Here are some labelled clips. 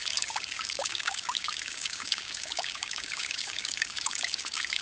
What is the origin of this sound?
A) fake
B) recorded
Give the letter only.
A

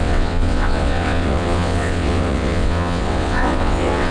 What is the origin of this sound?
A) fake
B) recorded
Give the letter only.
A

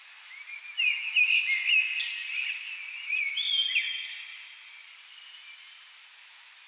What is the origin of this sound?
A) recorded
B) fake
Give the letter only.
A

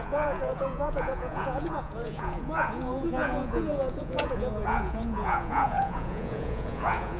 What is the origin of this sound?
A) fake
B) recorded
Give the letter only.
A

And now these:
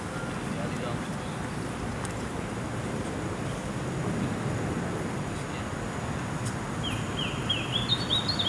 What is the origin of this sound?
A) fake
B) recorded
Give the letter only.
B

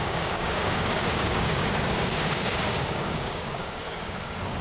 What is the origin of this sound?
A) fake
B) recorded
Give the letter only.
A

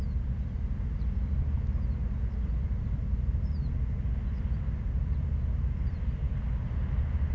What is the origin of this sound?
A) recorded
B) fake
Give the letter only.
A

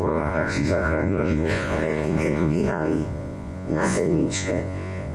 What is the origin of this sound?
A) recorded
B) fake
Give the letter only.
B